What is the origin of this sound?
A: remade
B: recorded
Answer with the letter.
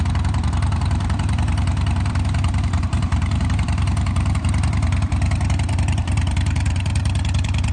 A